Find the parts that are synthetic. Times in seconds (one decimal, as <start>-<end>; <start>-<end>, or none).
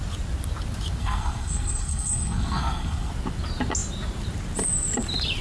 1.0-3.1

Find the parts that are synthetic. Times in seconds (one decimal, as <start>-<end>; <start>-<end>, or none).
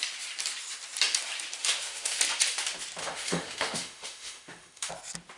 1.6-2.2; 3.0-4.9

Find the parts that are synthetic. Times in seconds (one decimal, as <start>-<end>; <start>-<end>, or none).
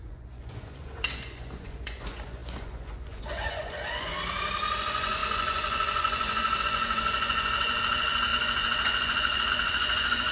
0.0-4.1; 4.8-10.3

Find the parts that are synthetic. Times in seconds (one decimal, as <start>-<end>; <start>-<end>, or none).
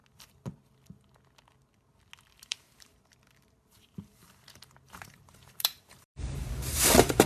2.5-7.3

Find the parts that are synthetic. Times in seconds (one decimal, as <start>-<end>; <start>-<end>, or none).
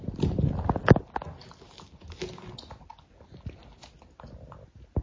none